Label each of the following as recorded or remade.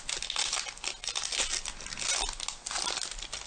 recorded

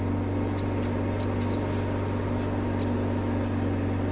recorded